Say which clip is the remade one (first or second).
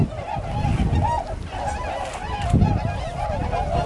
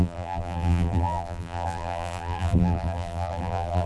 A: second